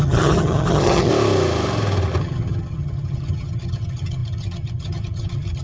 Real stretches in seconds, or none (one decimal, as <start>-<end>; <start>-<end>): 1.1-2.2